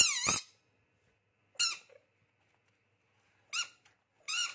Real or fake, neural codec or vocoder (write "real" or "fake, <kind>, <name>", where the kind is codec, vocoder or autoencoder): real